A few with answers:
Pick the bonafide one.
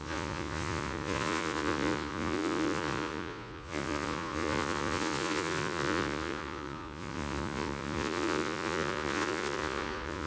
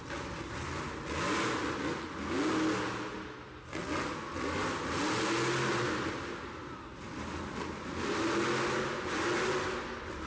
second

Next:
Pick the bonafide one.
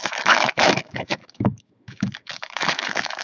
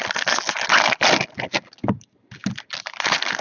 second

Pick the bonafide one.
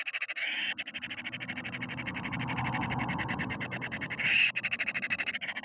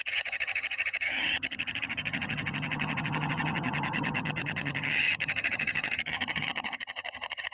first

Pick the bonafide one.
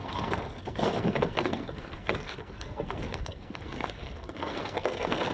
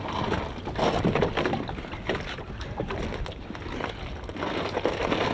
second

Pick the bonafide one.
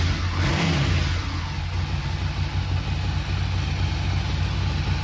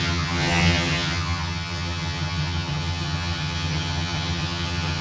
first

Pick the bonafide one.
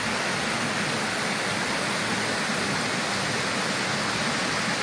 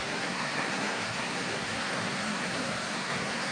first